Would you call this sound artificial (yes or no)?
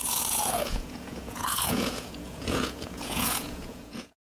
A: yes